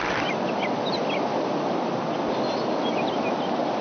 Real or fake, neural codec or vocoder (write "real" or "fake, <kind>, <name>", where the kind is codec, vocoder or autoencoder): real